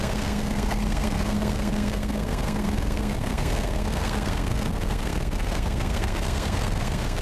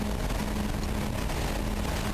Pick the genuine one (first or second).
second